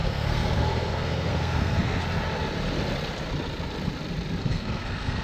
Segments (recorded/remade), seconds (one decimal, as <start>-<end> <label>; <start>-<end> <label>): 0.0-2.0 remade; 2.0-4.4 recorded; 4.4-5.2 remade